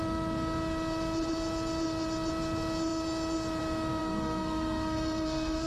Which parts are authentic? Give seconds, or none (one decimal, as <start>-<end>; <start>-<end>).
0.0-4.0